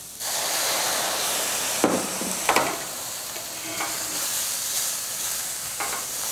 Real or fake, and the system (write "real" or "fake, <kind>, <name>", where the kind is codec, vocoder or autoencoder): fake, vocoder, BigVGAN v2